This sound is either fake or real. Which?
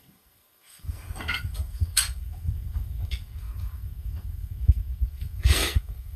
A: fake